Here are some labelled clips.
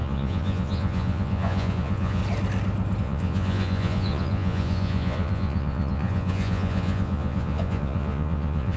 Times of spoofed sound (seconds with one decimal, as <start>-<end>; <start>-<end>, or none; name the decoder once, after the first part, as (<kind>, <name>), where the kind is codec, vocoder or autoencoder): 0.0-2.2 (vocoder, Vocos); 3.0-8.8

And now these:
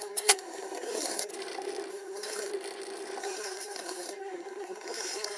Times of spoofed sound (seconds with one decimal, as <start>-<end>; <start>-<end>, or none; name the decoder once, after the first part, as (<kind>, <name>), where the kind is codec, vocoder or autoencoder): 0.0-1.3 (codec, SNAC); 1.9-2.5; 3.2-5.4

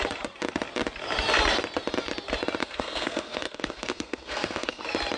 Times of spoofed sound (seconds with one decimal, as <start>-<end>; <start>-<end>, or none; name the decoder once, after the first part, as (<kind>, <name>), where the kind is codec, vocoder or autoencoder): 2.6-4.8 (codec, SNAC)